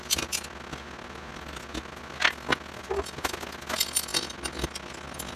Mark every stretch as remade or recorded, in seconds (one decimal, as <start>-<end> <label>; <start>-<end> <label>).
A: 0.0-5.4 recorded

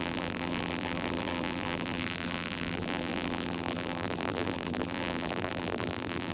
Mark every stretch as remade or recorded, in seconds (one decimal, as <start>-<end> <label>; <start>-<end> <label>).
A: 0.0-6.3 remade

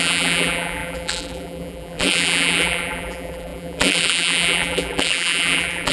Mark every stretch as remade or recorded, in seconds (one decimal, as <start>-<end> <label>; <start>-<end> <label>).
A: 0.0-5.9 remade

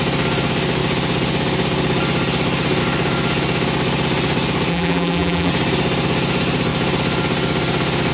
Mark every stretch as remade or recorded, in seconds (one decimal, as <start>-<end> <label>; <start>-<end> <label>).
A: 0.0-4.7 recorded; 4.7-5.5 remade; 5.5-8.1 recorded

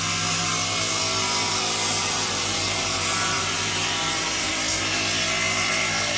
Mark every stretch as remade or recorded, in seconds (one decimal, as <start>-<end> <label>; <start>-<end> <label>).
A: 0.0-1.9 recorded; 1.9-4.5 remade; 4.5-6.2 recorded

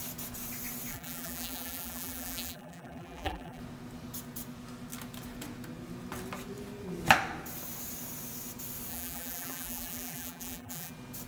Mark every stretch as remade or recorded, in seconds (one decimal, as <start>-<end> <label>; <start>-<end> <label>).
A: 0.0-0.9 recorded; 0.9-3.6 remade; 3.6-8.9 recorded; 8.9-10.9 remade; 10.9-11.3 recorded

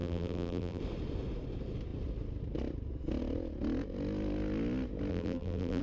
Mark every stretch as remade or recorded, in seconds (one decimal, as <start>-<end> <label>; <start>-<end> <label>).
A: 0.0-0.8 remade; 0.8-5.1 recorded; 5.1-5.8 remade